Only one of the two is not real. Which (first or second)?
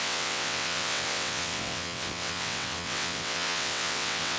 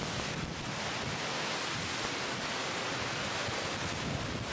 first